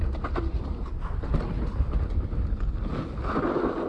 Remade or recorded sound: recorded